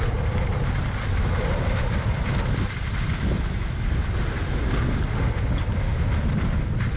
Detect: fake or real real